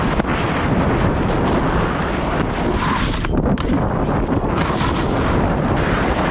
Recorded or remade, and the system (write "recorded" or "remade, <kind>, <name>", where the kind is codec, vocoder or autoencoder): recorded